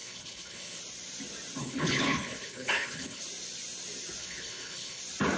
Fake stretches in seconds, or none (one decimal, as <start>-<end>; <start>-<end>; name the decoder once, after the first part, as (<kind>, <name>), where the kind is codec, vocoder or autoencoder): 0.0-0.8 (codec, HILCodec); 1.6-3.2; 4.2-5.0